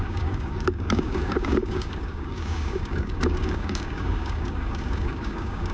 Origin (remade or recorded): remade